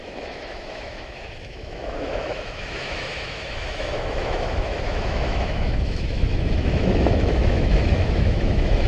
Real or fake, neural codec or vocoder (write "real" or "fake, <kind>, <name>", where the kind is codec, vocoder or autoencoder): fake, autoencoder, DAC-VAE